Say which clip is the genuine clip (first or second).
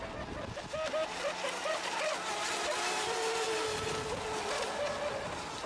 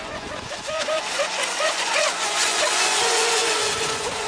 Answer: first